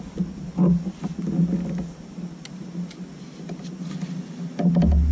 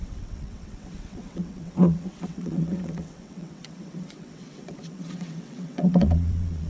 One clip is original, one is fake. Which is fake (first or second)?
second